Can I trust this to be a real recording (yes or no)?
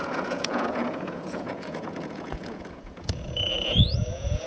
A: no